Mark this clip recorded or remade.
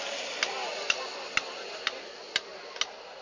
recorded